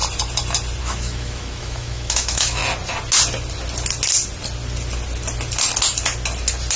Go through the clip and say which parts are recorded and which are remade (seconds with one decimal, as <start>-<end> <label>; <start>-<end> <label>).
0.0-0.8 recorded; 0.8-2.6 remade; 2.6-6.8 recorded